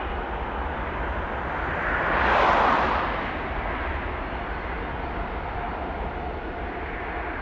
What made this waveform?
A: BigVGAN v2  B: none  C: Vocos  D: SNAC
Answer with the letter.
B